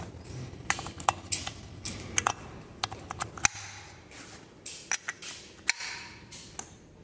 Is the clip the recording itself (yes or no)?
yes